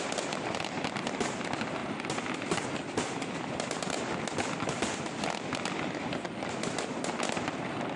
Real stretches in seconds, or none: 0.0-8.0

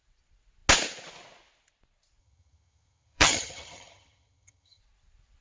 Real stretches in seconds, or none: 0.0-2.2; 4.8-5.4

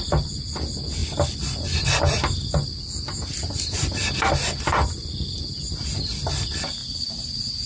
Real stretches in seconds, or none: 0.0-7.7

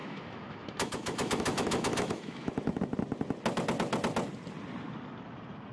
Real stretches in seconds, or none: 2.8-5.7

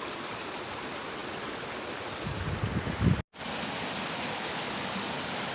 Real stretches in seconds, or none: 0.0-5.5

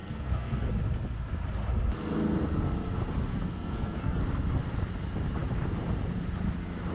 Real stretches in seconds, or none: 0.7-3.3; 4.2-6.9